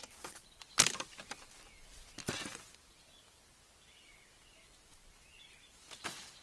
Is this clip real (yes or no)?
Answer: yes